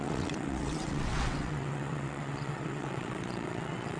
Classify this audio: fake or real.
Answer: fake